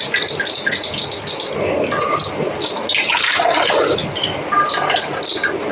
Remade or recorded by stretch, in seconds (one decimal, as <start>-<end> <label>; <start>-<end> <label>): 0.0-5.7 recorded